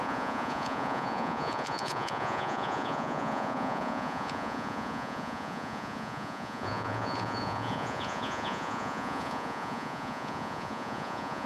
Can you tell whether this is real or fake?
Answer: fake